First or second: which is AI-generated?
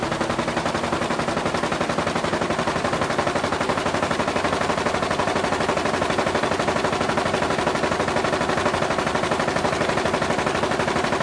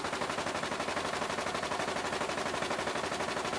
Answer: first